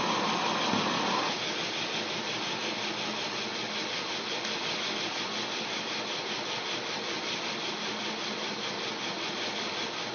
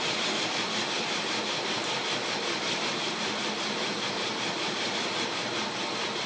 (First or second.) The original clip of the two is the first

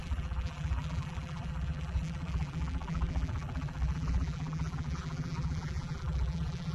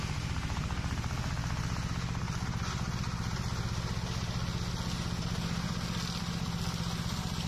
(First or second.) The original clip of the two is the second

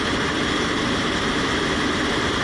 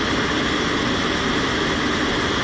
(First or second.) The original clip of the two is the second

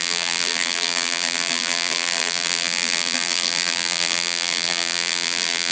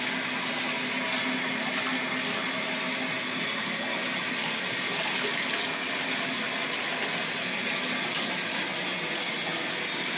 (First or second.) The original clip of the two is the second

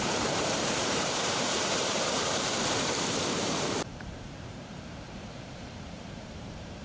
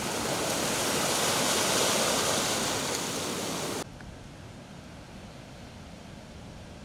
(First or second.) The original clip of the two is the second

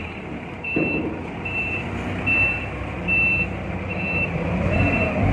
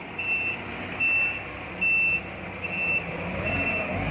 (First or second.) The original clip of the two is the second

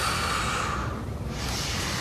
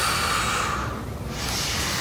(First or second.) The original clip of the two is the second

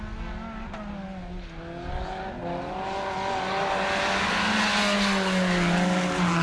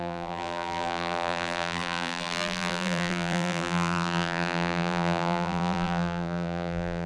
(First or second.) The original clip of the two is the first